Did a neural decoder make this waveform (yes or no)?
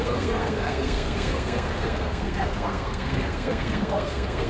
yes